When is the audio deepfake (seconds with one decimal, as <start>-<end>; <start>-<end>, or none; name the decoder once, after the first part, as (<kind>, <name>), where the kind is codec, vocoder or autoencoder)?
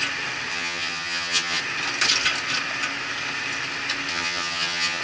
0.5-1.6 (vocoder, HiFi-GAN); 4.1-5.0